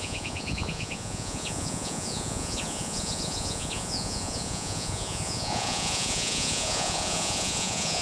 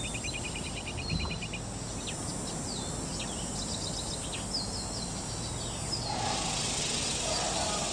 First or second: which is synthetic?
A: first